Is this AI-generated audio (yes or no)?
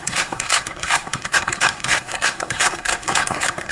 yes